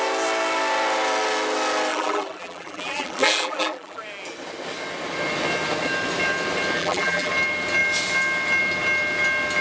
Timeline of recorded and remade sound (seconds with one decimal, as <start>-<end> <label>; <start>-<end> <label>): 0.0-1.9 recorded; 1.9-4.0 remade; 4.0-6.8 recorded; 6.8-7.3 remade; 7.3-9.6 recorded